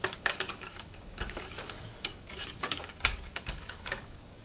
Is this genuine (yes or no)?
no